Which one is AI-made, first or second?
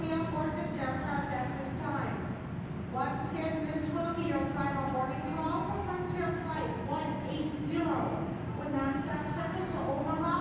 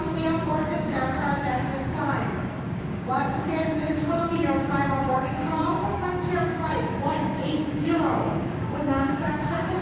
second